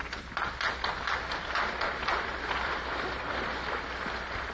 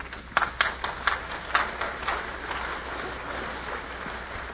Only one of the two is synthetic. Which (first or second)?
first